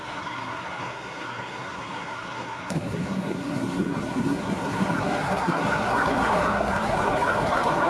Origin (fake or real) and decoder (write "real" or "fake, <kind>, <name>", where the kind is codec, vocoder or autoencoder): fake, codec, SNAC